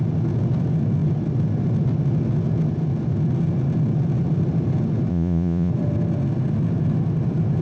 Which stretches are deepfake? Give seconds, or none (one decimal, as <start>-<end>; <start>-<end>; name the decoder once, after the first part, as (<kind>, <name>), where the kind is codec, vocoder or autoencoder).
5.1-5.7 (vocoder, Vocos)